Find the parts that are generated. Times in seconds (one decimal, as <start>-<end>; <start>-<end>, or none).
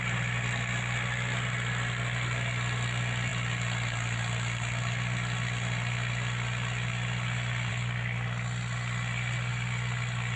none